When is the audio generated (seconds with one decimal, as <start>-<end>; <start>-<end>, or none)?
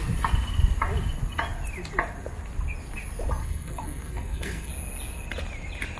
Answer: 3.4-4.7